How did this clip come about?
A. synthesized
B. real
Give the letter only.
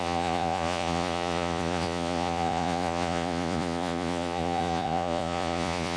A